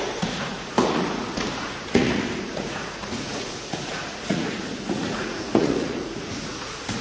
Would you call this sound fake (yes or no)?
yes